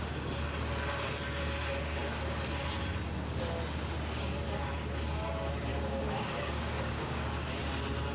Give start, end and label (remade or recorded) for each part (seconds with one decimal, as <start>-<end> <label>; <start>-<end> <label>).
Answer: 0.0-5.7 recorded; 5.7-7.6 remade; 7.6-8.1 recorded